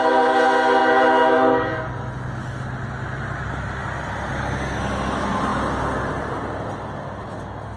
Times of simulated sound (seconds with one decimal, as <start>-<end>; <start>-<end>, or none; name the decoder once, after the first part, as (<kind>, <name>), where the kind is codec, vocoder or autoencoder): 7.2-7.8 (autoencoder, DAC-VAE)